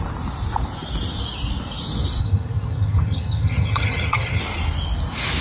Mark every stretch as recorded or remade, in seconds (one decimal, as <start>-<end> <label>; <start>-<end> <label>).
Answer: 0.0-2.2 recorded; 2.2-4.4 remade; 4.4-5.4 recorded